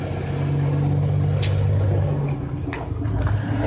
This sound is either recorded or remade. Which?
recorded